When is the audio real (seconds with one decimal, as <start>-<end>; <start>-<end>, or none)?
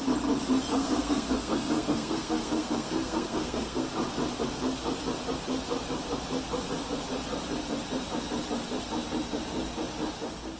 0.0-0.7; 3.9-10.6